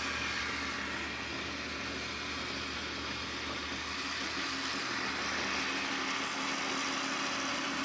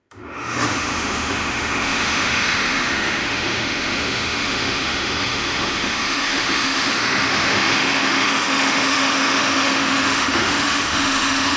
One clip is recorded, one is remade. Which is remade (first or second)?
second